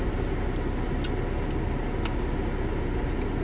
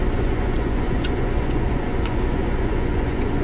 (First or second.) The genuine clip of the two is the first